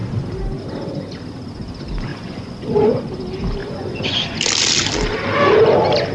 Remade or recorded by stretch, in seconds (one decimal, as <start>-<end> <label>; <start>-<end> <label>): 0.0-2.1 recorded; 2.1-3.0 remade; 3.0-3.6 recorded; 3.6-4.4 remade; 4.4-6.1 recorded

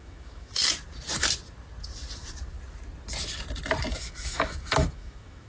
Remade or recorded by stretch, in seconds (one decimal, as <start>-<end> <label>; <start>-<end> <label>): 0.0-0.6 remade; 0.6-3.9 recorded; 3.9-5.5 remade

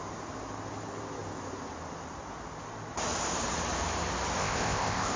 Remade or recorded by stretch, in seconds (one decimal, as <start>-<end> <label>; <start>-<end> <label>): 0.0-4.4 recorded; 4.4-5.2 remade

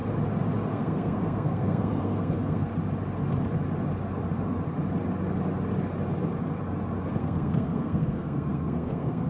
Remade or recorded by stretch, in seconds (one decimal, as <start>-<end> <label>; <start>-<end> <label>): 0.0-0.7 recorded; 0.7-2.7 remade; 2.7-7.1 recorded; 7.1-9.3 remade

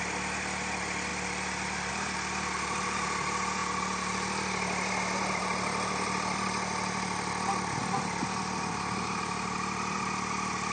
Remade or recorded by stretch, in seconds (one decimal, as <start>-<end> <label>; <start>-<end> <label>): 0.0-10.7 recorded